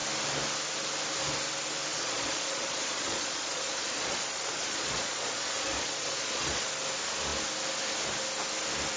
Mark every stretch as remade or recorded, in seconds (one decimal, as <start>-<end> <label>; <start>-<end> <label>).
0.0-1.9 recorded; 1.9-6.7 remade; 6.7-9.0 recorded